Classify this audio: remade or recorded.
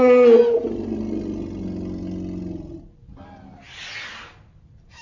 recorded